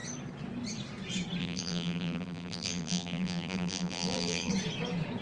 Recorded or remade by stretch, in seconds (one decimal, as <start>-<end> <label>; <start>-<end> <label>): 0.0-1.4 recorded; 1.4-4.5 remade; 4.5-5.2 recorded